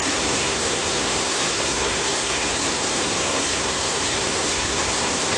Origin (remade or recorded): remade